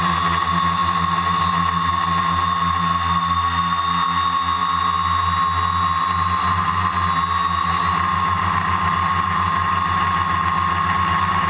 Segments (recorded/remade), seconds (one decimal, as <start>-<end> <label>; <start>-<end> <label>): 0.0-11.5 recorded